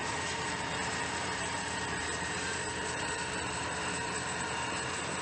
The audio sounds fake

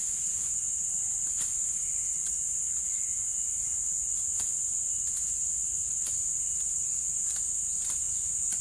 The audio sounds real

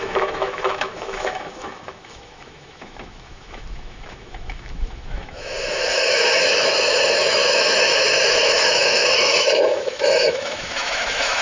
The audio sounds fake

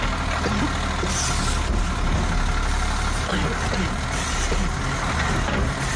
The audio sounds real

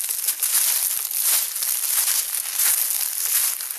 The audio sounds real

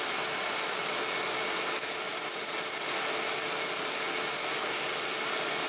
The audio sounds real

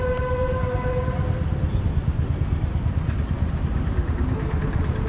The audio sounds real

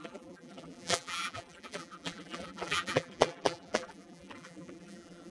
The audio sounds fake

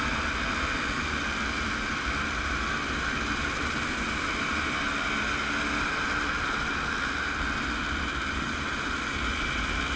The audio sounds real